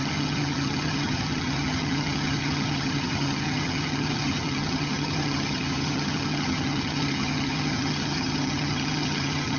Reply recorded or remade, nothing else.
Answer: remade